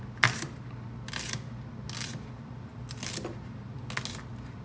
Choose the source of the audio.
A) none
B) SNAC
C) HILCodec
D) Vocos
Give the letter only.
A